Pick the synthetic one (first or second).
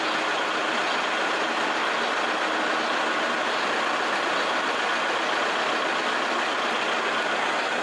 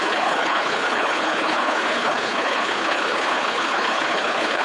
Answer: second